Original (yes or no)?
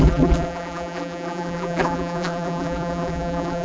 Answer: no